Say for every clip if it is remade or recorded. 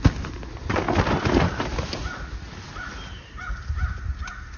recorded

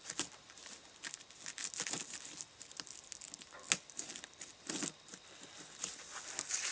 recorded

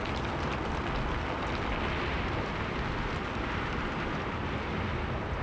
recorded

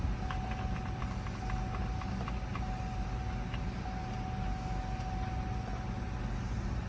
recorded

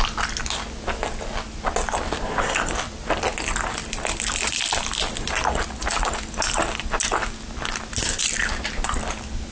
recorded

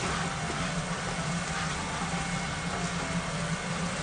recorded